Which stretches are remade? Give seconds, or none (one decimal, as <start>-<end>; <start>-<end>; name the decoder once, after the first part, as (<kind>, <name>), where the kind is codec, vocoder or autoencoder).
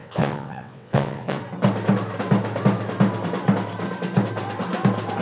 0.0-1.4 (vocoder, WaveNeXt)